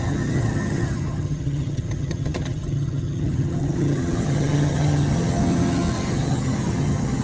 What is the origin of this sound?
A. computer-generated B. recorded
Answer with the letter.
A